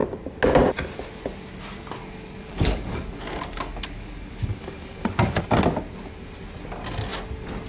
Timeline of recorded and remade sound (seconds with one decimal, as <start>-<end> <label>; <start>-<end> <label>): 0.0-2.0 recorded; 2.0-5.4 remade; 5.4-7.7 recorded